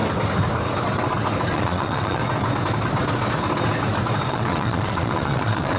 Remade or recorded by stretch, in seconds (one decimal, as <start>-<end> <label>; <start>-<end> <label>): 0.0-1.5 recorded; 1.5-2.2 remade; 2.2-4.3 recorded; 4.3-5.8 remade